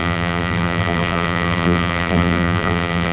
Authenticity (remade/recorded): remade